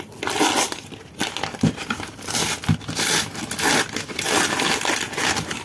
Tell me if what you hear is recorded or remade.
recorded